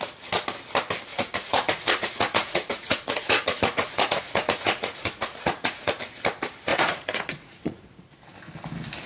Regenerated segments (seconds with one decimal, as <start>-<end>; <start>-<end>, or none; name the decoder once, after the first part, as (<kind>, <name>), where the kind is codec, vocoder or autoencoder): 1.1-5.9 (vocoder, Vocos); 6.7-7.8